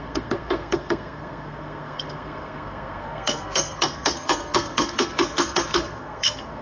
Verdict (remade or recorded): remade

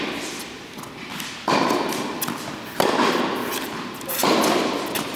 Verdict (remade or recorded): recorded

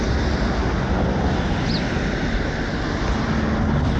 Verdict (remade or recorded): recorded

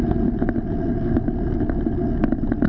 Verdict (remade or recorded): recorded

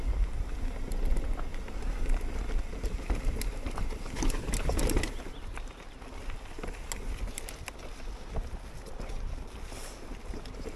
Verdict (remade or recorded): recorded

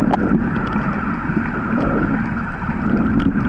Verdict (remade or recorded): recorded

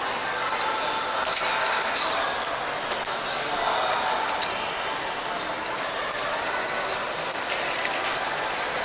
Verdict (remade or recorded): recorded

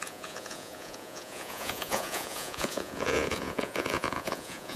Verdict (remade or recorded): remade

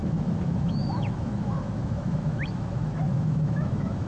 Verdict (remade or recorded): remade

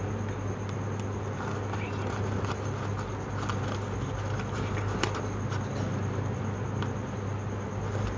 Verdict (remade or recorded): recorded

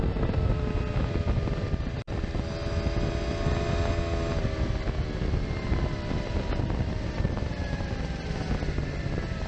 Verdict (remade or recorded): recorded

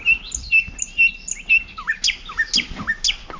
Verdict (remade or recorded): recorded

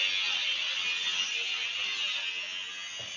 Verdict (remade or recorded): recorded